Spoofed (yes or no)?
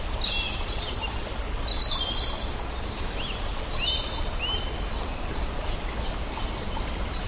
no